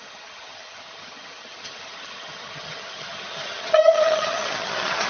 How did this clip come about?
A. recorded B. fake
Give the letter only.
B